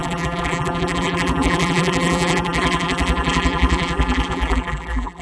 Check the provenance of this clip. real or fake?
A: fake